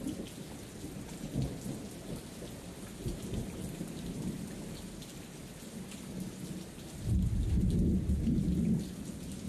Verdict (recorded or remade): recorded